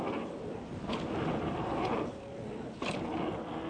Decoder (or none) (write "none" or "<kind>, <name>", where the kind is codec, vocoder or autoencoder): none